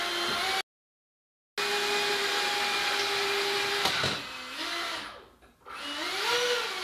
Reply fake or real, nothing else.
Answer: real